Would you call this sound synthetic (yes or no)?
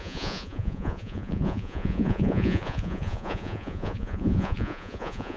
yes